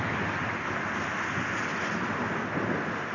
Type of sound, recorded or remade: recorded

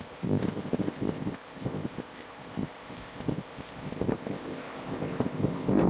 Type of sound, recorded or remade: remade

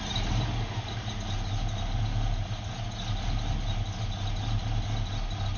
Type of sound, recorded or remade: recorded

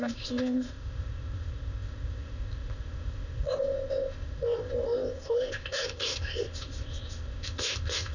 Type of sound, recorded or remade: remade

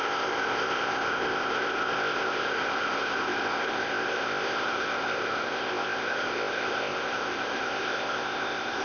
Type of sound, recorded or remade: remade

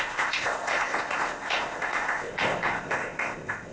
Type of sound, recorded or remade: remade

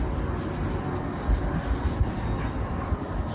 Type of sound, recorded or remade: recorded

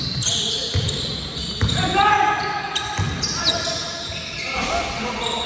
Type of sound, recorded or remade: recorded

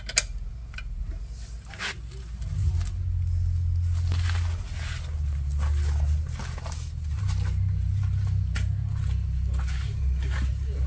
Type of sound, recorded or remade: recorded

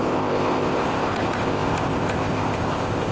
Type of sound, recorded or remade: remade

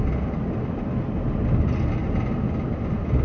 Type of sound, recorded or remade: recorded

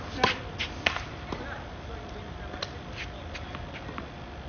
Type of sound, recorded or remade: recorded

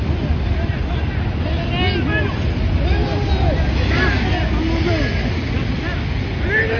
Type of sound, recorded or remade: recorded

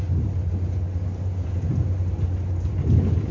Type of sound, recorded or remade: recorded